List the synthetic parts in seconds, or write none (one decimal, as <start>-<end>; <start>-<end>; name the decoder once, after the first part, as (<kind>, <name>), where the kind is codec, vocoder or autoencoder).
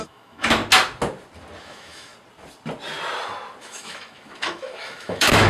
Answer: 0.0-0.6 (autoencoder, DAC-VAE); 1.6-2.1; 3.6-5.5